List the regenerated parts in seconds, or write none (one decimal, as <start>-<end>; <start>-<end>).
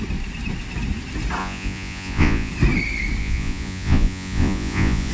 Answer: 1.4-2.5; 3.2-5.1